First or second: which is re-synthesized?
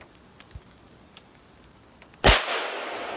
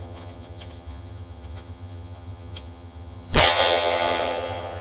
second